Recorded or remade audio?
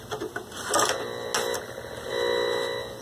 recorded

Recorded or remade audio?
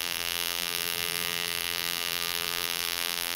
remade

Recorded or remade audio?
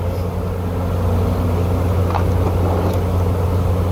recorded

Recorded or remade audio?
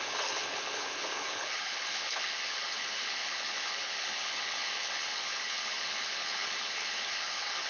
remade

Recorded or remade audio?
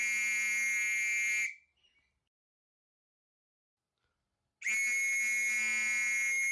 recorded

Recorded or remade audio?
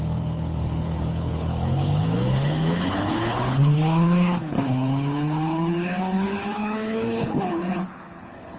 remade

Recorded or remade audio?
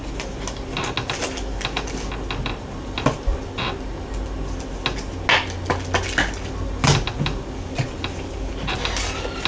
recorded